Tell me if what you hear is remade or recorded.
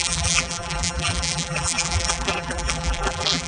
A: remade